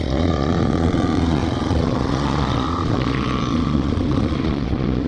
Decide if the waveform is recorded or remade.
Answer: remade